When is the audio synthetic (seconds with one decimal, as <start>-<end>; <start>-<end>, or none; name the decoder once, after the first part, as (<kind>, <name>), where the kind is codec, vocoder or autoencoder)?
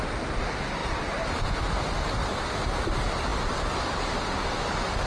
0.8-1.4 (vocoder, BigVGAN v2)